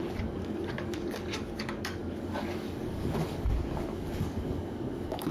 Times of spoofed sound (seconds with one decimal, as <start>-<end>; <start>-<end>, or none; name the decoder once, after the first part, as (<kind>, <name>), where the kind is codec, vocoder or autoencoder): 0.0-5.3 (codec, DAC)